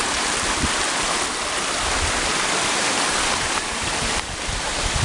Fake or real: real